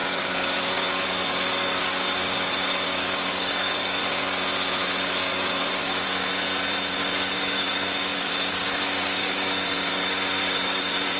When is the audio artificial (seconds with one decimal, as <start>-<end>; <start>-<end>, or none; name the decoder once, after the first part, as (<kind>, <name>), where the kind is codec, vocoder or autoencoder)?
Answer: 0.0-4.0 (codec, DAC); 4.8-6.3; 6.9-11.2